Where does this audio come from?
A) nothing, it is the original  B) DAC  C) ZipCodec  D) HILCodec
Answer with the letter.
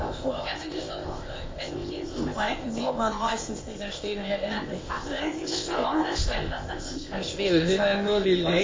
C